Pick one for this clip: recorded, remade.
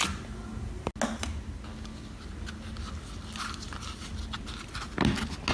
recorded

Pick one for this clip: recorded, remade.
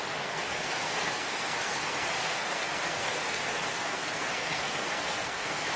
remade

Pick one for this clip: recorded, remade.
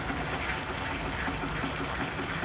recorded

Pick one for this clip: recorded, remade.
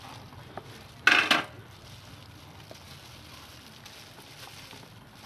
recorded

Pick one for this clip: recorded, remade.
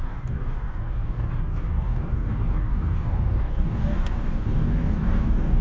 remade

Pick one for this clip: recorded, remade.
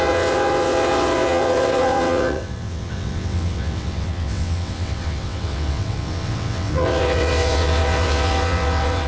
remade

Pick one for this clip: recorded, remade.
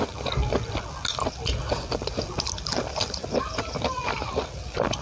recorded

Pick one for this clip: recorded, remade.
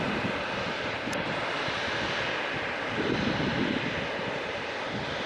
recorded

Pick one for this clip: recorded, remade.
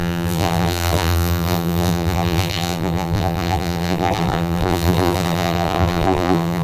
remade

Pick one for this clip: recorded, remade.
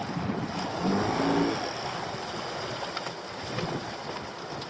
recorded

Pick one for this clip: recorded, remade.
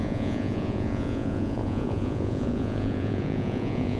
remade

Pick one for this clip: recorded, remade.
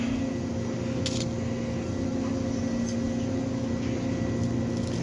recorded